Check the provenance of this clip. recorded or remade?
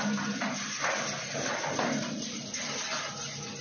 recorded